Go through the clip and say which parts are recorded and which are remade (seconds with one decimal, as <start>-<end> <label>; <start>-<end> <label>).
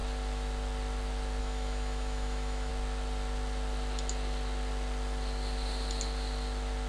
0.0-1.4 recorded; 1.4-2.7 remade; 2.7-6.9 recorded